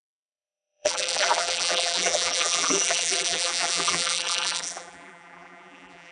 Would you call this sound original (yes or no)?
no